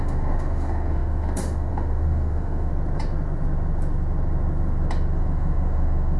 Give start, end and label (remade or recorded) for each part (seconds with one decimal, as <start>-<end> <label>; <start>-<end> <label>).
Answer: 0.0-2.7 remade; 2.7-5.2 recorded; 5.2-6.2 remade